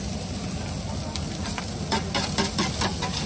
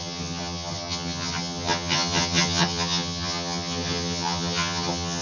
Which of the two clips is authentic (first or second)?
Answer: first